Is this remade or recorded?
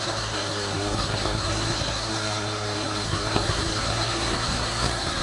remade